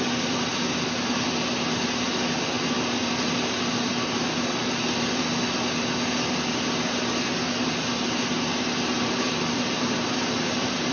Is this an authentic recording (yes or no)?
yes